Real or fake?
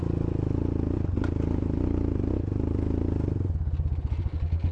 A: real